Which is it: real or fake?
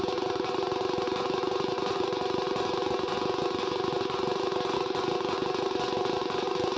real